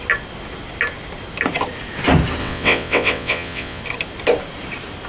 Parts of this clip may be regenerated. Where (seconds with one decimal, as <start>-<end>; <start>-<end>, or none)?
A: 2.4-3.8